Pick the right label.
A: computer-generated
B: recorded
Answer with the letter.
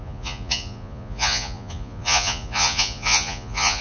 A